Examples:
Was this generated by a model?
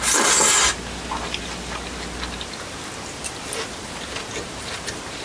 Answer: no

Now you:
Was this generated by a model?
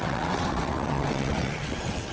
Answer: yes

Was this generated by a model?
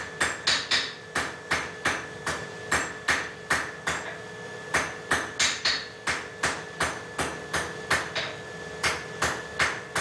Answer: no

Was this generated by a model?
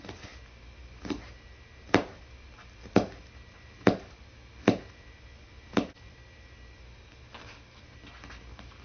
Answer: no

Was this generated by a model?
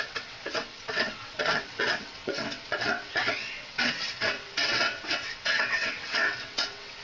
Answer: yes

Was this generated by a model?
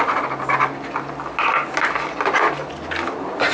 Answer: no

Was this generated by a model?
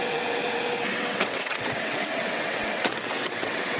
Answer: yes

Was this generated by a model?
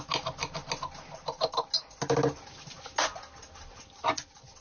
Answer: no